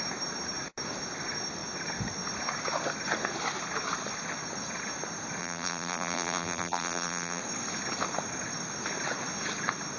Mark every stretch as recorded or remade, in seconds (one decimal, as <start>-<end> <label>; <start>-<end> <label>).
0.0-5.4 recorded; 5.4-7.4 remade; 7.4-10.0 recorded